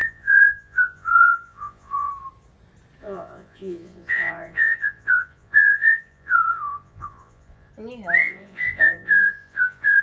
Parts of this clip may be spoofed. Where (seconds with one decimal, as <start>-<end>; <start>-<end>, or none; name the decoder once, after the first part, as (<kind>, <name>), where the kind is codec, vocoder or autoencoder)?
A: 0.0-2.1 (vocoder, Vocos); 3.0-7.7; 8.2-10.0